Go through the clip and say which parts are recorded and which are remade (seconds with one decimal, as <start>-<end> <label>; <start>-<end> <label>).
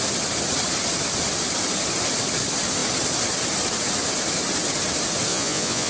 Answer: 0.0-5.3 recorded; 5.3-5.9 remade